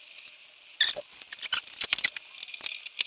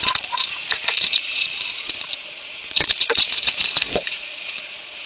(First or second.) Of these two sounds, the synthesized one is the second